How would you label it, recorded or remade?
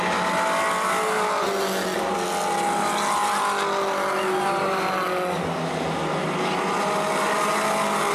recorded